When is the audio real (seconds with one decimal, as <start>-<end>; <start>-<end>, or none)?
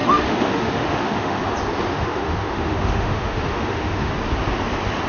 1.4-1.9; 4.1-5.1